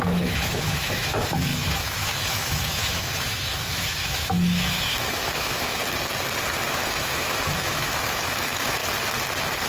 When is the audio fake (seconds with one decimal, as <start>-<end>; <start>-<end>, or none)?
0.0-5.8; 6.7-8.8